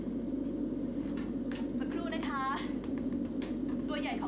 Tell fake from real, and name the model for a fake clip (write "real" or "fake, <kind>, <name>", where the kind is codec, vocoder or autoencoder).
real